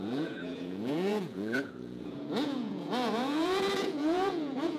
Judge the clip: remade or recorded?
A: remade